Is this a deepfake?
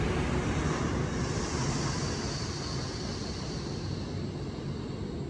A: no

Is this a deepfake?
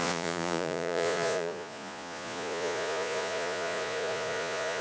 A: yes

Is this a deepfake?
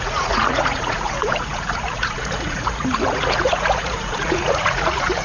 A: yes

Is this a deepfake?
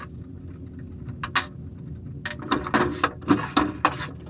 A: no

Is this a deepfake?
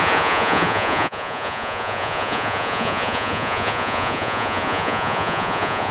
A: yes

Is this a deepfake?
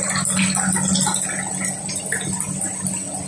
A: no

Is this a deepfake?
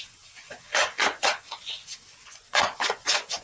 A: yes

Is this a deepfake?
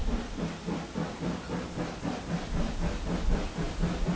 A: no